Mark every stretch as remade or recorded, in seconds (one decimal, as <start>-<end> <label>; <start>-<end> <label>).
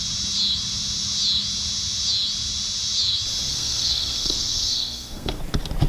0.0-3.5 recorded; 3.5-5.4 remade; 5.4-5.9 recorded